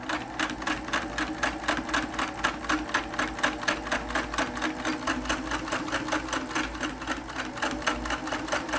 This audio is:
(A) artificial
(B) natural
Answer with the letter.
B